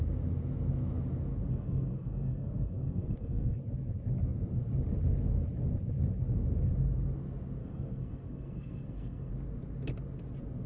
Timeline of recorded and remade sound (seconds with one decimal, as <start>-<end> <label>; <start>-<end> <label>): 0.0-1.5 recorded; 1.5-3.6 remade; 3.6-7.6 recorded; 7.6-9.3 remade; 9.3-10.7 recorded

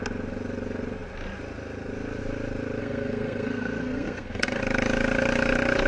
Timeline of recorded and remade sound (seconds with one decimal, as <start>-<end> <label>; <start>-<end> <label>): 0.0-2.8 recorded; 2.8-4.6 remade; 4.6-5.9 recorded